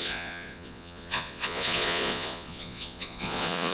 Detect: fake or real fake